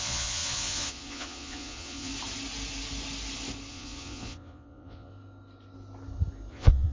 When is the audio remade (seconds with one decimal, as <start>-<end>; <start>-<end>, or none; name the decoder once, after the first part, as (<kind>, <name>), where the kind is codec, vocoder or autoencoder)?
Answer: 0.0-2.1 (vocoder, Vocos); 3.7-5.1; 6.5-6.9